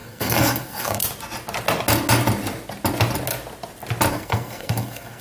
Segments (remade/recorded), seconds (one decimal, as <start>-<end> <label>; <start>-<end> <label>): 0.0-1.0 remade; 1.0-4.1 recorded; 4.1-5.2 remade